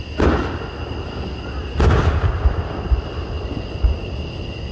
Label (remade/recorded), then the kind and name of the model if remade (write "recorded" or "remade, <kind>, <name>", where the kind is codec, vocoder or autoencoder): recorded